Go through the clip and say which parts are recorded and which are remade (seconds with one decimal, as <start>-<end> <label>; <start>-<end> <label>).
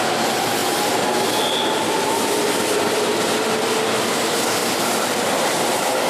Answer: 0.0-4.6 recorded; 4.6-5.4 remade; 5.4-6.1 recorded